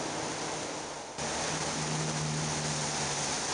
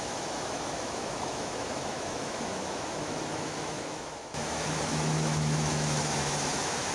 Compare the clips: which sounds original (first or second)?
first